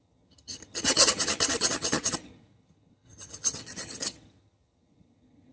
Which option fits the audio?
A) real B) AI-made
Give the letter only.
B